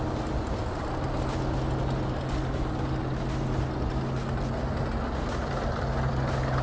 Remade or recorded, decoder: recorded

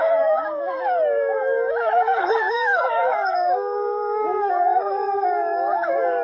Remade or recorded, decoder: remade, codec, DAC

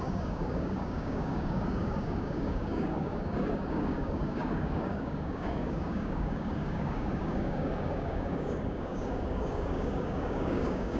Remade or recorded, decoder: remade, codec, DAC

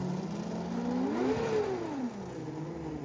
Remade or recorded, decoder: recorded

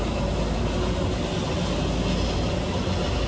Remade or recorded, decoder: recorded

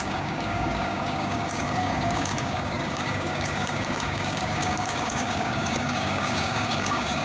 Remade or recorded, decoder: remade, codec, DAC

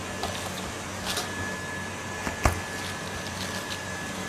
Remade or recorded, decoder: recorded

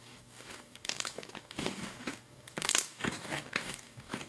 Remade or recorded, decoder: remade, codec, DAC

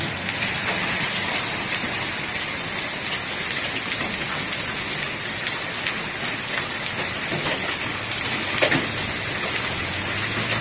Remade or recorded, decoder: recorded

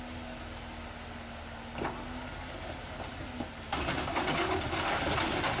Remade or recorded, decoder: recorded